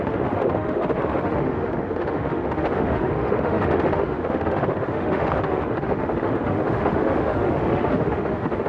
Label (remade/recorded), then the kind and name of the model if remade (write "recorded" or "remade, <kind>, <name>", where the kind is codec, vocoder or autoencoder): remade, autoencoder, DAC-VAE